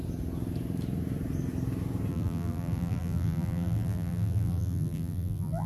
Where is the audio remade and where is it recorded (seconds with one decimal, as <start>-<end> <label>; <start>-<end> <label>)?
0.0-2.1 recorded; 2.1-5.7 remade